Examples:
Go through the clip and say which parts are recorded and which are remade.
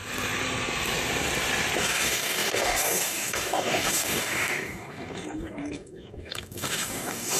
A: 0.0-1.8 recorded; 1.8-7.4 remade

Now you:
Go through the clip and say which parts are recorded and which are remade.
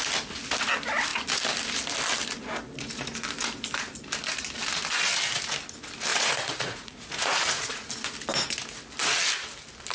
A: 0.0-6.1 recorded; 6.1-7.9 remade; 7.9-9.9 recorded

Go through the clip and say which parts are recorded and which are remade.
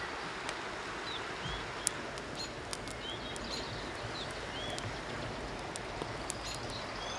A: 0.0-7.2 recorded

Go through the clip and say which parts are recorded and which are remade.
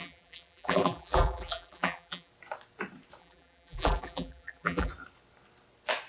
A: 0.0-2.3 remade; 2.3-3.2 recorded; 3.2-4.9 remade; 4.9-6.1 recorded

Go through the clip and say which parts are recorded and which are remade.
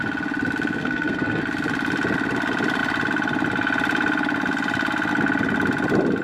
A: 0.0-0.8 recorded; 0.8-1.4 remade; 1.4-6.2 recorded